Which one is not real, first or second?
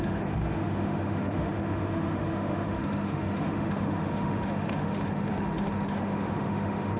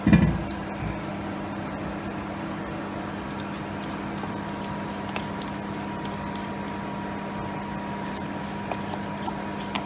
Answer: first